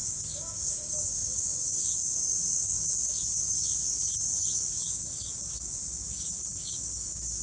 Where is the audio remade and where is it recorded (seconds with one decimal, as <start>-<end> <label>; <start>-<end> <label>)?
0.0-7.4 remade